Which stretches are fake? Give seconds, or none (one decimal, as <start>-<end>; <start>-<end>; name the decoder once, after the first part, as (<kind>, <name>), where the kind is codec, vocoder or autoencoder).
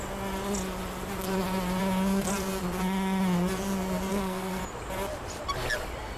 4.1-4.6 (codec, SNAC)